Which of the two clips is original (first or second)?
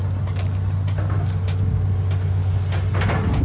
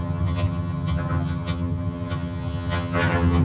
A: first